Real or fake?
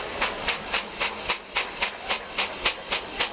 real